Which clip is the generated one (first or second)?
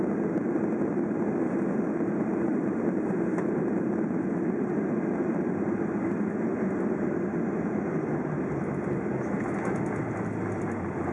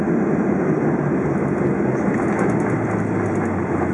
first